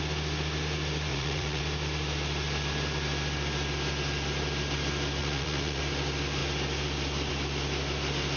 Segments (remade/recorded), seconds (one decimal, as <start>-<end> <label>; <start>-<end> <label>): 0.0-1.1 recorded; 1.1-1.6 remade; 1.6-5.2 recorded; 5.2-5.8 remade; 5.8-8.4 recorded

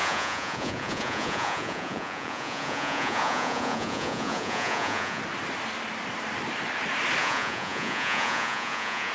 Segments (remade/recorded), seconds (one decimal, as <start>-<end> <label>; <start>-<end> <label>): 0.0-5.2 remade; 5.2-7.2 recorded; 7.2-9.1 remade

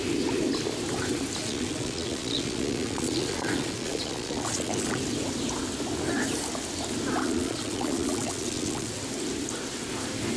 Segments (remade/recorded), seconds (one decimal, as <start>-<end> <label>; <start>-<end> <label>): 0.0-1.4 recorded; 1.4-5.0 remade; 5.0-7.2 recorded; 7.2-8.9 remade; 8.9-10.4 recorded

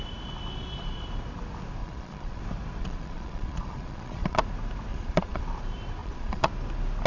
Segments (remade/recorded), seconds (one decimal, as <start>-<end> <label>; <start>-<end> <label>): 0.0-1.8 recorded; 1.8-2.4 remade; 2.4-2.8 recorded; 2.8-4.4 remade; 4.4-4.9 recorded; 4.9-5.4 remade; 5.4-6.0 recorded; 6.0-6.5 remade; 6.5-7.1 recorded

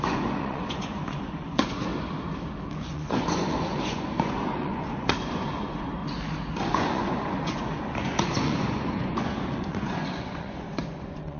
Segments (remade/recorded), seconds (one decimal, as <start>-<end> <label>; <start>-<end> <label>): 0.0-1.9 remade; 1.9-2.8 recorded; 2.8-6.0 remade; 6.0-6.7 recorded; 6.7-11.4 remade

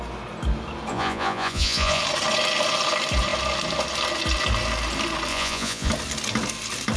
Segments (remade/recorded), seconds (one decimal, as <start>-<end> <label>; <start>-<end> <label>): 0.0-0.9 recorded; 0.9-2.0 remade; 2.0-5.3 recorded; 5.3-5.9 remade; 5.9-7.0 recorded

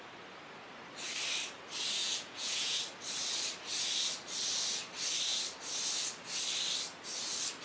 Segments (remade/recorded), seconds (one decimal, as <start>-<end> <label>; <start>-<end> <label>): 0.0-2.0 recorded; 2.0-2.8 remade; 2.8-7.6 recorded